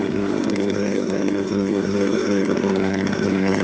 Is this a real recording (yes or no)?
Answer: no